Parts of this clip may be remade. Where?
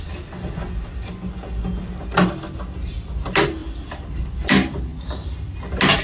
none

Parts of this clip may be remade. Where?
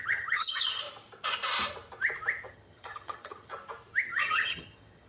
0.0-0.8 (vocoder, HiFi-GAN); 2.5-3.5; 4.1-5.1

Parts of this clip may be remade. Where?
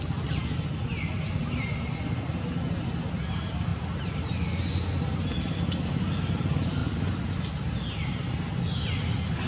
none